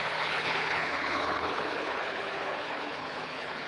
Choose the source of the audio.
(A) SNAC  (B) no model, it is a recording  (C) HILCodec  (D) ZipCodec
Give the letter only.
C